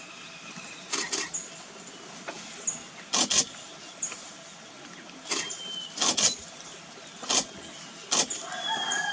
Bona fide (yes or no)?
yes